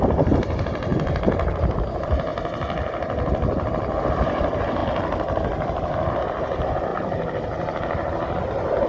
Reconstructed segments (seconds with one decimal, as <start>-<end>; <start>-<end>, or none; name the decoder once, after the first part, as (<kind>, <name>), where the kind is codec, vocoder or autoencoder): 0.0-0.9 (vocoder, BigVGAN v2); 1.6-2.3; 4.0-4.8; 6.2-8.9